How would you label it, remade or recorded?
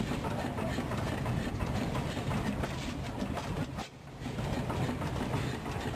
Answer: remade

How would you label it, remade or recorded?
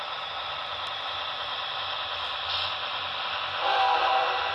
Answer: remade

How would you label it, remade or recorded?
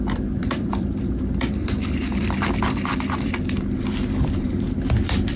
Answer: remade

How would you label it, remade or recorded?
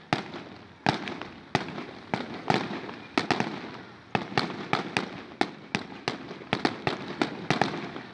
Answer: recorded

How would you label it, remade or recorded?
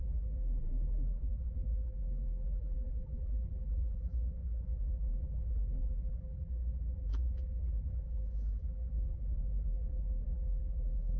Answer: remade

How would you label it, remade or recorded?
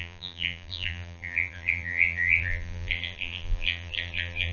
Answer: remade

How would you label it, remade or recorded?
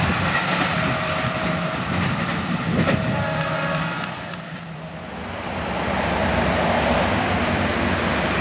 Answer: remade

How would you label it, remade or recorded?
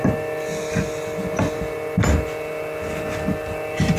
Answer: recorded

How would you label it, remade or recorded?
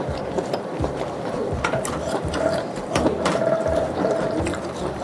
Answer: remade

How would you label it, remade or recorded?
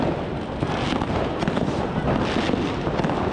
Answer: recorded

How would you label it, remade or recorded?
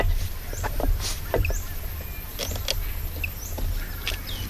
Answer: recorded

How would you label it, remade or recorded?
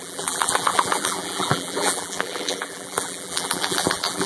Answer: remade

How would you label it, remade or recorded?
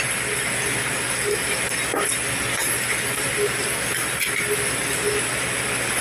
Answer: recorded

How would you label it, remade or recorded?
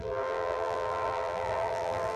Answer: remade